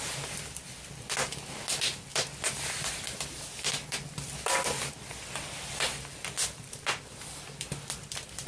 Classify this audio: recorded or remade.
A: recorded